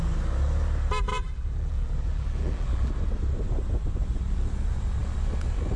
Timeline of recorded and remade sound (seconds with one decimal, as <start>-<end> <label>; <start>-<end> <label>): 0.0-1.1 recorded; 1.1-2.9 remade; 2.9-5.8 recorded